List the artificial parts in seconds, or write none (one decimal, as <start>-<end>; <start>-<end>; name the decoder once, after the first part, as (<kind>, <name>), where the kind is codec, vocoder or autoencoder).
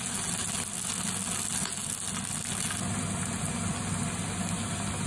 none